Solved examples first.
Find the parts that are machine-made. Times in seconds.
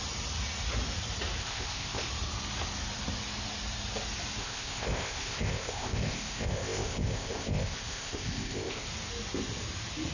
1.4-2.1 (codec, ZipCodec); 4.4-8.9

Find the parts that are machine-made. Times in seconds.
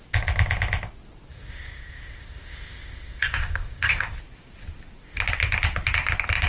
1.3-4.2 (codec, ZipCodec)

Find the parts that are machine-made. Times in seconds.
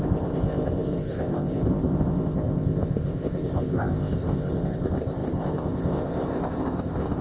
0.0-7.2 (codec, ZipCodec)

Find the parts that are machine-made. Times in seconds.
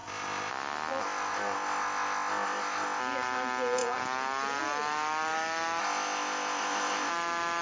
0.0-0.5 (codec, ZipCodec); 1.0-3.0; 5.8-7.1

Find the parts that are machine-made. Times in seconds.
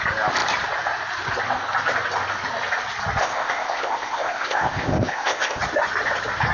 3.2-5.6 (codec, ZipCodec)